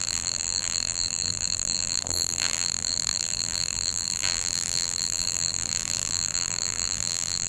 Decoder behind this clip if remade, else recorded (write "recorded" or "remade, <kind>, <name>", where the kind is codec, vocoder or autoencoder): remade, vocoder, BigVGAN v2